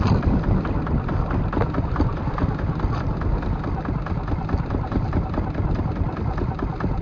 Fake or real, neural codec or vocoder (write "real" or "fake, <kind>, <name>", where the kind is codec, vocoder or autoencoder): real